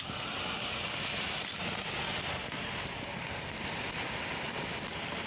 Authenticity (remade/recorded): recorded